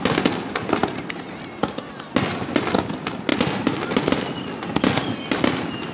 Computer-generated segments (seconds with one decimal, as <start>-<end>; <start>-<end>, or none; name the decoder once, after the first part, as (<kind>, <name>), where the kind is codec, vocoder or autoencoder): none